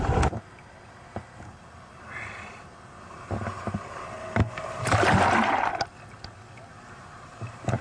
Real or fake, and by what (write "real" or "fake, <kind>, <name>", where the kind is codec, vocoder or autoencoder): real